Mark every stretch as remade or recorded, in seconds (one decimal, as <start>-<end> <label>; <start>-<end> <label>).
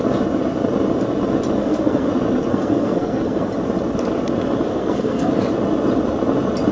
0.0-1.6 recorded; 1.6-2.1 remade; 2.1-2.5 recorded; 2.5-3.5 remade; 3.5-4.7 recorded; 4.7-5.3 remade; 5.3-6.7 recorded